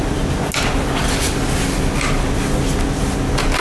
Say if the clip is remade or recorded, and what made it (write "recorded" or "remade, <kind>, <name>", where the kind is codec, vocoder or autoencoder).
recorded